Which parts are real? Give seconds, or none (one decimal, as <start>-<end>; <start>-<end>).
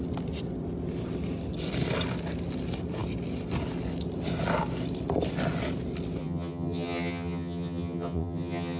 0.0-6.2